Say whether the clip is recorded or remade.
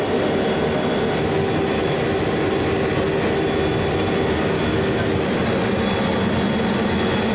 recorded